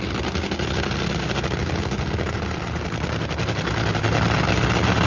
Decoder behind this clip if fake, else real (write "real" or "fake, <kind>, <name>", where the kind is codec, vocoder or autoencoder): real